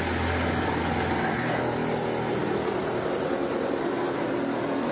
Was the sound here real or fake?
real